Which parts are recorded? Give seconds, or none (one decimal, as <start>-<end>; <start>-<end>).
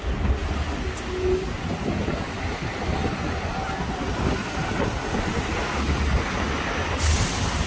0.0-7.7